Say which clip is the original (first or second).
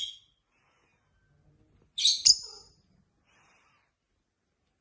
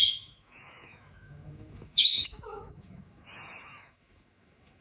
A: first